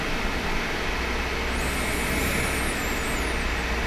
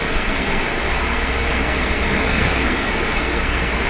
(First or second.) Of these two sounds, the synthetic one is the second